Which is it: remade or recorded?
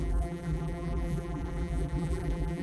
remade